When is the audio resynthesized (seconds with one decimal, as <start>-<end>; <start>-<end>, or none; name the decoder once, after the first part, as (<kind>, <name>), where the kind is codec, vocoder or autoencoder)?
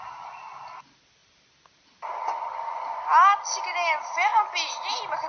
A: none